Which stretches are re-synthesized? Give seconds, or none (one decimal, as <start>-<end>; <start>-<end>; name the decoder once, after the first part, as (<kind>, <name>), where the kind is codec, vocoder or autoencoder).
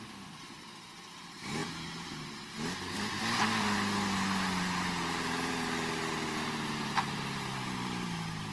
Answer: 0.0-8.5 (vocoder, BigVGAN v2)